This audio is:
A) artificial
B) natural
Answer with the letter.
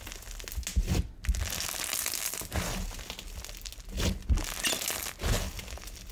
B